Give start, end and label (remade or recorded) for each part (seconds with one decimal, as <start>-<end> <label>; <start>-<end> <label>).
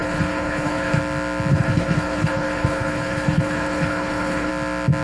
0.0-1.0 remade; 1.0-1.5 recorded; 1.5-4.5 remade; 4.5-5.0 recorded